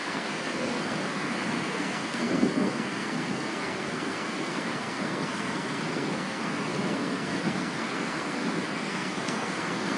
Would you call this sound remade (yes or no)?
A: yes